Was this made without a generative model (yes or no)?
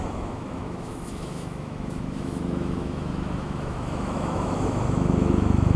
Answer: no